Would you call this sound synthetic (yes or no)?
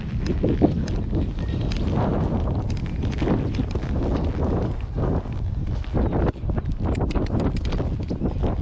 no